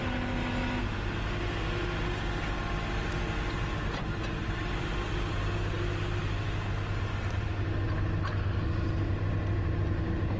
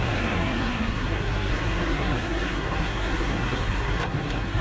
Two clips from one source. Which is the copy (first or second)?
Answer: second